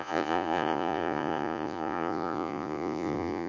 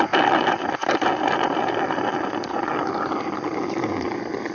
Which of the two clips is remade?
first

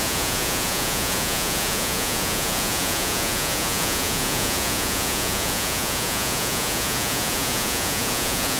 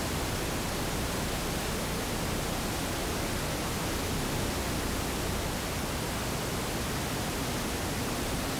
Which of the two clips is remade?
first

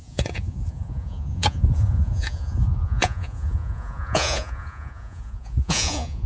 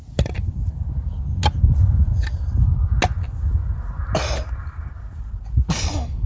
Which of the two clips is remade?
first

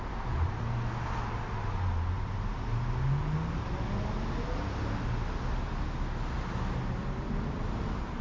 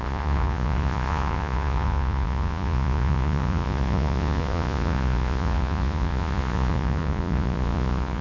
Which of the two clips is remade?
second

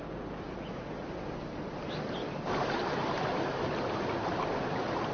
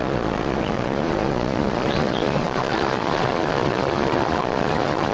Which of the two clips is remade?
second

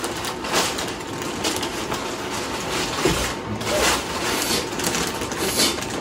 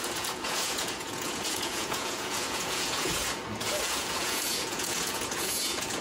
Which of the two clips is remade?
second